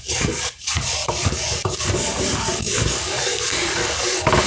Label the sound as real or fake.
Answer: fake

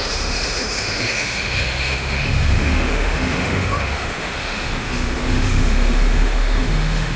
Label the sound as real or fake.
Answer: fake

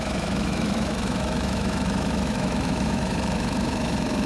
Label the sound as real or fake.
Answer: fake